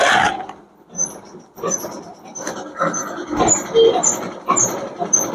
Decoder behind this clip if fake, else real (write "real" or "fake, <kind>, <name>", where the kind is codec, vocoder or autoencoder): real